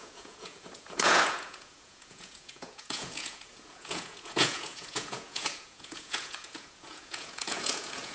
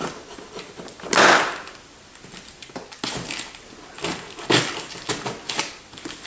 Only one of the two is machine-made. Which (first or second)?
first